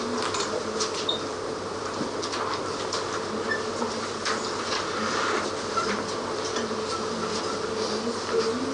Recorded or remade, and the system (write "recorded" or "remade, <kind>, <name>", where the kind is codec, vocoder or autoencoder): recorded